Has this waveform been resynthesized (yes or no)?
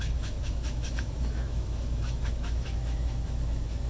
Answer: yes